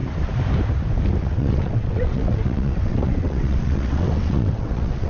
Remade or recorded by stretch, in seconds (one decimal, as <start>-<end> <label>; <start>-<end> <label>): 0.0-1.2 recorded; 1.2-5.1 remade